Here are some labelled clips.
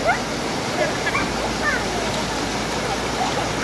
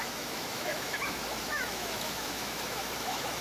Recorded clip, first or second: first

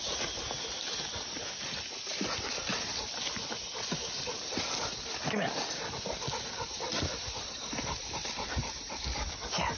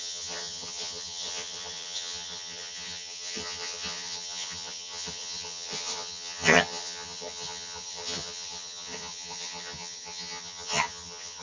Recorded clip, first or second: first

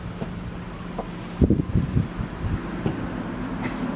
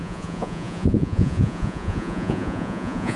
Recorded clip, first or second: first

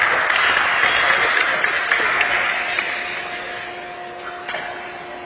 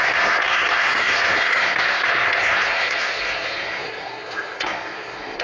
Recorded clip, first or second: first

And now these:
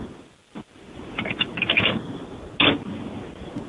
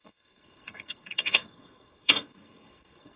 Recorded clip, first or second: first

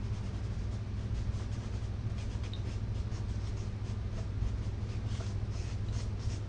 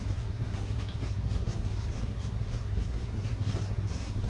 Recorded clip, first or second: first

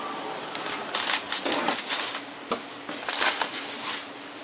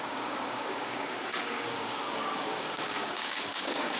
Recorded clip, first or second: first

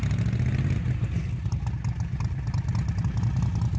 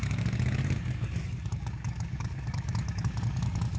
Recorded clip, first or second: first